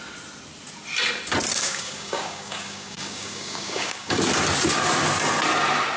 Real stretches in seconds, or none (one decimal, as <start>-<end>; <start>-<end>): 0.0-1.5; 4.2-6.0